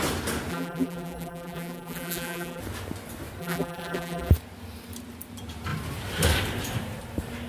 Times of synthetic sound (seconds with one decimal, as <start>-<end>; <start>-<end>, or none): 0.5-2.6; 3.4-4.3